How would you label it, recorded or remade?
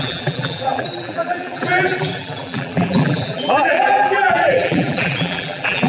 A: remade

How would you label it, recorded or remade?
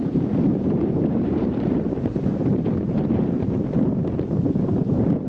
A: remade